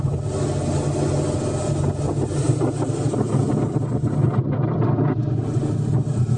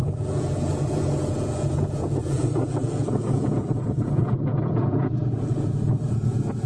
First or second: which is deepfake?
second